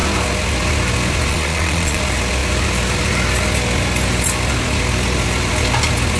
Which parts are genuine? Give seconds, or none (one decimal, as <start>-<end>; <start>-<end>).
0.0-1.3; 2.0-6.2